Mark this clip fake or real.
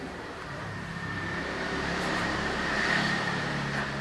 fake